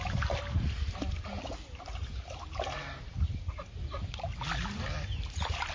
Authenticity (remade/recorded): recorded